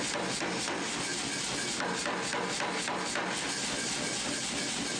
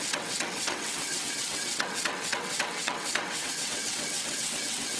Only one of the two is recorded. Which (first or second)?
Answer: first